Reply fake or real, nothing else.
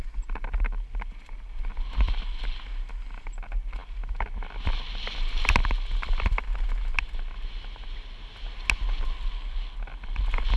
real